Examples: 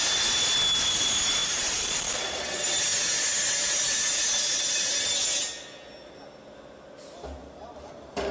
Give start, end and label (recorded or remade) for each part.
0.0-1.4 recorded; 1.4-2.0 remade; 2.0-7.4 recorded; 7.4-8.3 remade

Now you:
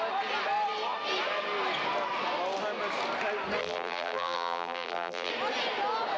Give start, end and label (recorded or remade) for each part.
0.0-3.6 recorded; 3.6-5.3 remade; 5.3-6.2 recorded

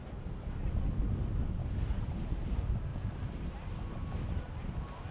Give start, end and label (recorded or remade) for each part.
0.0-1.6 recorded; 1.6-2.2 remade; 2.2-2.9 recorded; 2.9-4.5 remade; 4.5-5.1 recorded

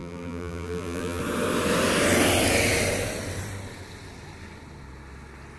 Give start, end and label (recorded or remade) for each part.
0.0-1.2 remade; 1.2-5.6 recorded

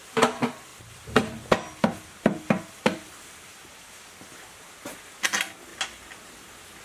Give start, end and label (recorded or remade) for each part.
0.0-0.7 recorded; 0.7-4.3 remade; 4.3-6.8 recorded